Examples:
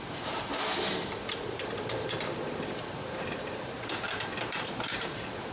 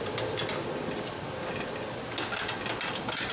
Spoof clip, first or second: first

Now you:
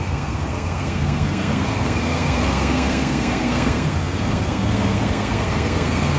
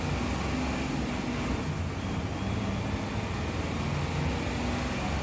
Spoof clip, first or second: first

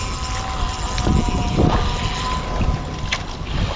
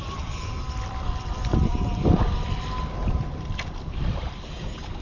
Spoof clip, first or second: second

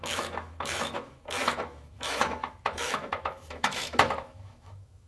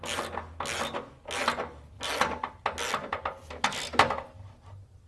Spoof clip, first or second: first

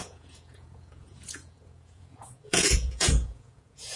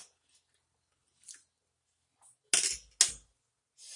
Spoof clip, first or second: first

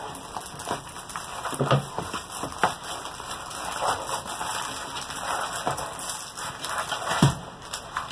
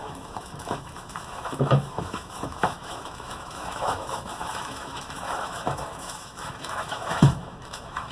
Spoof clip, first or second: second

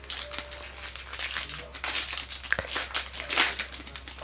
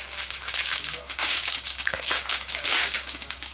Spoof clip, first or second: second